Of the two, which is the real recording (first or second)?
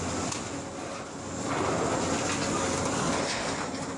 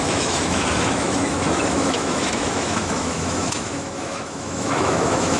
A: first